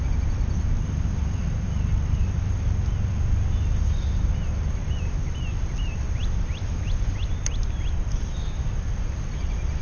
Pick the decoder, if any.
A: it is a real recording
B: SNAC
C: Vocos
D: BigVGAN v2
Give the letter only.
A